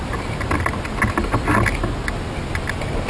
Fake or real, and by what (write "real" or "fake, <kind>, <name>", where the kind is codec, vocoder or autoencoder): real